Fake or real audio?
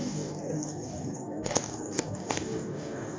fake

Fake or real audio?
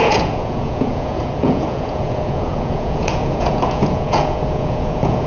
fake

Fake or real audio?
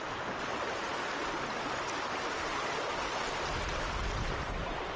real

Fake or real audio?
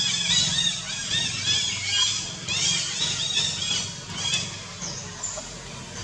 real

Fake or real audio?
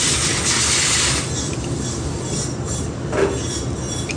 fake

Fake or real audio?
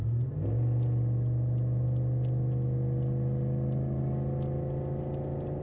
real